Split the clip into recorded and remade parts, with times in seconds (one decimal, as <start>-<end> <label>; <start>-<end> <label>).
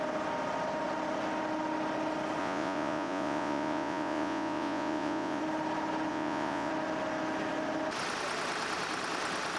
0.0-2.4 recorded; 2.4-5.4 remade; 5.4-6.1 recorded; 6.1-6.7 remade; 6.7-9.6 recorded